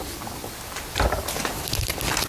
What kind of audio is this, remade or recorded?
recorded